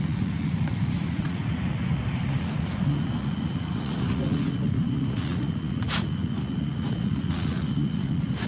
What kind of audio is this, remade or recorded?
remade